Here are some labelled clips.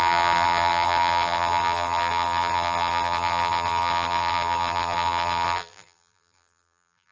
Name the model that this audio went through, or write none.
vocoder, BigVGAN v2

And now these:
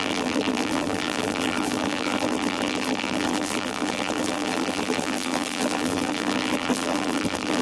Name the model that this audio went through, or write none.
vocoder, BigVGAN v2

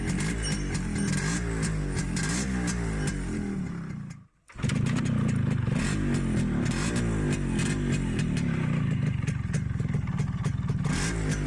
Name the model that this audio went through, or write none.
none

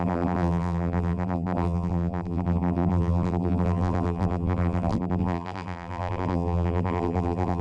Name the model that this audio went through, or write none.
vocoder, BigVGAN v2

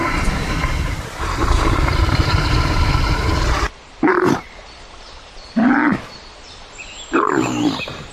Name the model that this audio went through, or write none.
vocoder, BigVGAN v2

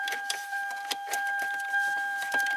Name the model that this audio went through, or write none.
vocoder, BigVGAN v2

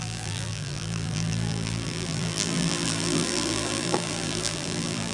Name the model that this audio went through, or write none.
vocoder, BigVGAN v2